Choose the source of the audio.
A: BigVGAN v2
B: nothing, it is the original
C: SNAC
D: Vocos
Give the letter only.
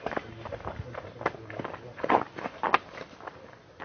B